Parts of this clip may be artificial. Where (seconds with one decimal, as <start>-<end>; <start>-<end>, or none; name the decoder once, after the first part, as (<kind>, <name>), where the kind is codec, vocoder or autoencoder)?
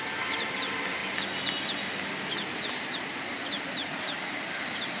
0.0-1.0 (vocoder, BigVGAN v2); 1.6-5.0